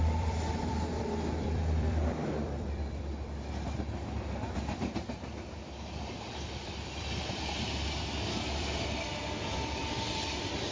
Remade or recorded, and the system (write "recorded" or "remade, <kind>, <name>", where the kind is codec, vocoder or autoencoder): remade, vocoder, BigVGAN v2